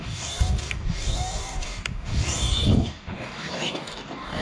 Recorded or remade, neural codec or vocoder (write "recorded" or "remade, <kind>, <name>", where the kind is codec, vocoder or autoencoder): remade, codec, DAC